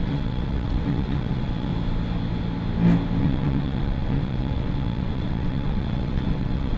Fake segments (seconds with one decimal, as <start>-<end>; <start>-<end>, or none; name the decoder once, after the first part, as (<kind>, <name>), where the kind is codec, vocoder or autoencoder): 0.0-1.7 (vocoder, WaveNeXt); 3.2-6.8